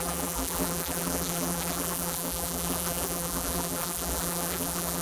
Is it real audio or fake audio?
fake